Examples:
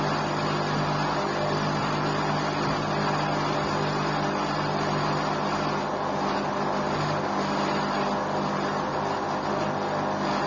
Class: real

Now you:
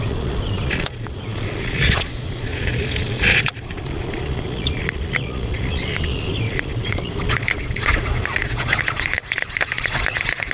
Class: fake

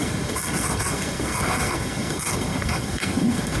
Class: fake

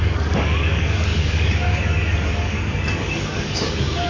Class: fake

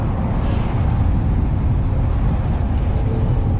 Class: real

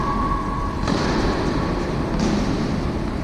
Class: real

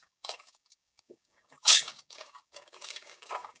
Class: fake